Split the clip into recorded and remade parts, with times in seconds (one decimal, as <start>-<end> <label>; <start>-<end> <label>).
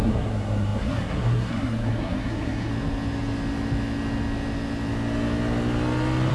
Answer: 0.0-2.7 remade; 2.7-6.3 recorded